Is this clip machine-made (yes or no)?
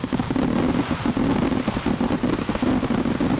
no